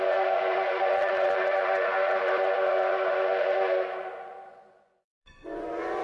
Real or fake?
fake